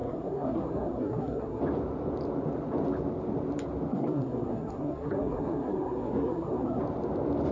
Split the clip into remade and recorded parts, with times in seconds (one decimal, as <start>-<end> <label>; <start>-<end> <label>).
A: 0.0-1.6 remade; 1.6-3.9 recorded; 3.9-6.8 remade; 6.8-7.5 recorded